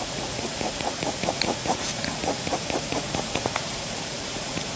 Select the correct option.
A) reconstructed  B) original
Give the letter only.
A